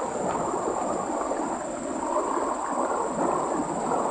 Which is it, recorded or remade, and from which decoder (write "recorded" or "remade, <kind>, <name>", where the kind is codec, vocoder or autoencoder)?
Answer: recorded